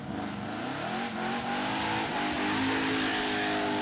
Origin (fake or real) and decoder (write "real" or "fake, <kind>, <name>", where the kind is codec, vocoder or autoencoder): real